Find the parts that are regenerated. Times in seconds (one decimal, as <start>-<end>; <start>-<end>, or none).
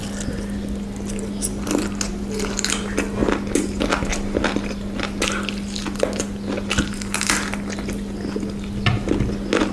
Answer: none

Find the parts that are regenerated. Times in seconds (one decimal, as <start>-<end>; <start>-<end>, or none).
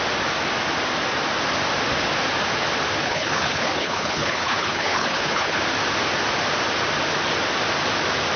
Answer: 3.0-5.6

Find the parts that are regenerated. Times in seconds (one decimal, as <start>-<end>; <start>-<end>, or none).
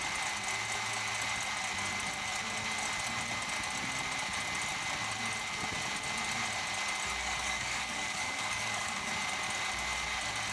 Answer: 7.2-9.1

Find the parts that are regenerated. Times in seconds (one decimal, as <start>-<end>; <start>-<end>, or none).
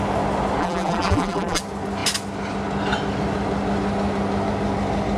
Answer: 0.6-1.6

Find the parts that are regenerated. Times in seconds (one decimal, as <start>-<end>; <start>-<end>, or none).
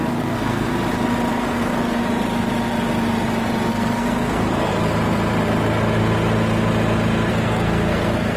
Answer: 0.0-0.7; 1.3-2.0; 3.7-4.7; 7.3-8.4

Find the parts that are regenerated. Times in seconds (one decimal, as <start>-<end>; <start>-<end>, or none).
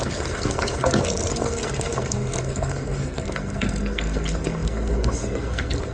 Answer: 0.0-5.9